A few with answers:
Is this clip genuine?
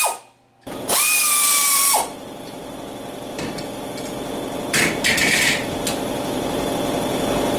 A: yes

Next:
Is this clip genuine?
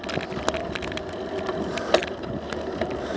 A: yes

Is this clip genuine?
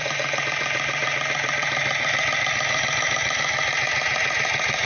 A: no